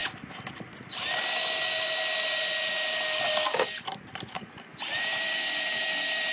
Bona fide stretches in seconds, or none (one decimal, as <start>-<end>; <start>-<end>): 0.0-3.8